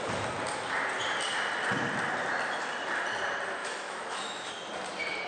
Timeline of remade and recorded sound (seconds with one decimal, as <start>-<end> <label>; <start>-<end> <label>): 0.0-3.6 recorded; 3.6-4.5 remade; 4.5-5.3 recorded